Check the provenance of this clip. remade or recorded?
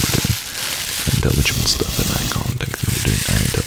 recorded